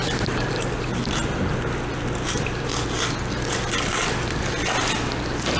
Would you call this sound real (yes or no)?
yes